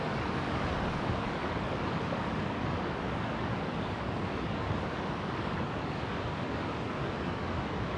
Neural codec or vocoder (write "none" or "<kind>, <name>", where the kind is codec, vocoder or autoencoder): codec, DAC